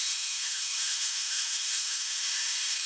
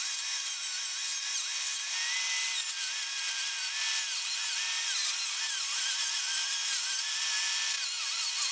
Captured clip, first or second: second